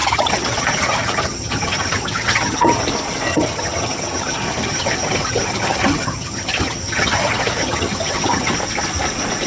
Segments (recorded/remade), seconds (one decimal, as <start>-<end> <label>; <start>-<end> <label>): 0.0-2.8 remade; 2.8-3.3 recorded; 3.3-8.5 remade; 8.5-9.5 recorded